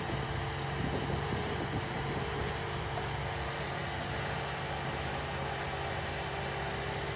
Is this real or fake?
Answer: real